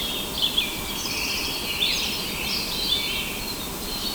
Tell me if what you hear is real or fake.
real